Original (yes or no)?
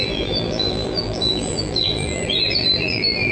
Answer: no